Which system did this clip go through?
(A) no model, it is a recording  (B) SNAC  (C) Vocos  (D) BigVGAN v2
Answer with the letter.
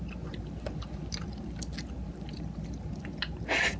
A